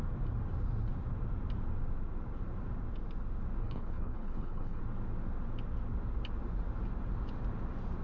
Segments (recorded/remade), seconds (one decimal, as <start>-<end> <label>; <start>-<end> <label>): 0.0-3.6 recorded; 3.6-4.8 remade; 4.8-8.0 recorded